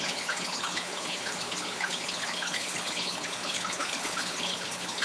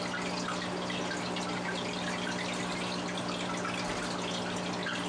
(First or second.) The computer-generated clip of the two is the first